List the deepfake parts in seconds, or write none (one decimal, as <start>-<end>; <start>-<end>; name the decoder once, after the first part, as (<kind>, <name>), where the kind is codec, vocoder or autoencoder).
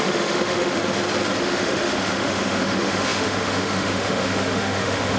0.0-0.8 (autoencoder, DAC-VAE); 1.4-5.2